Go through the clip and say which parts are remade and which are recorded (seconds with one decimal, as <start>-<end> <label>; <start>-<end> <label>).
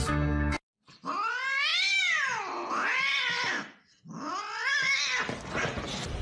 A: 0.0-6.2 recorded